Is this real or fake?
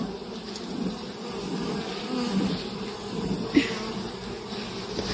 real